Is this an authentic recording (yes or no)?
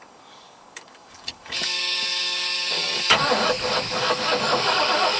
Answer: no